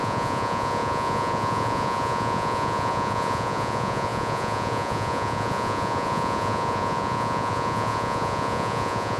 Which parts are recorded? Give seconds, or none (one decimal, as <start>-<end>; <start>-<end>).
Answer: none